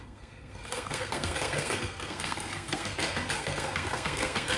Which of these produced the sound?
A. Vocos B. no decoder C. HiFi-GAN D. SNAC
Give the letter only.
D